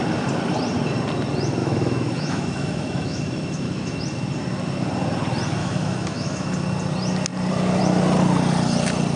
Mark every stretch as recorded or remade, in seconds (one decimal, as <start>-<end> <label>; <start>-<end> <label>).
0.0-1.6 recorded; 1.6-4.0 remade; 4.0-5.6 recorded; 5.6-6.5 remade; 6.5-9.2 recorded